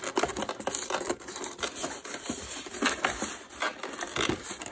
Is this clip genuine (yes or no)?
yes